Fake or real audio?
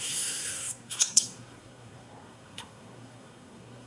fake